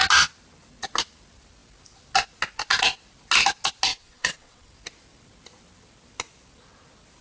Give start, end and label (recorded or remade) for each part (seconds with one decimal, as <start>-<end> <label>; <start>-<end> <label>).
0.0-3.9 recorded; 3.9-4.7 remade; 4.7-7.2 recorded